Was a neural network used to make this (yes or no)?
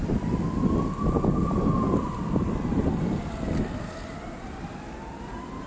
no